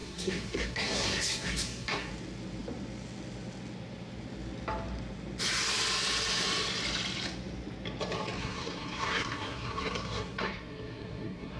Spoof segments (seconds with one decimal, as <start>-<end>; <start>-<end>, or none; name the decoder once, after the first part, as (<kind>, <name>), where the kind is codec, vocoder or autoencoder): 0.0-2.1 (codec, SNAC); 8.4-11.6